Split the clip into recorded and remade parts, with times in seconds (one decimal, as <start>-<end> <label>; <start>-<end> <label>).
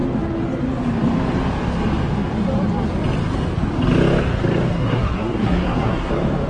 0.0-4.7 recorded; 4.7-6.1 remade; 6.1-6.5 recorded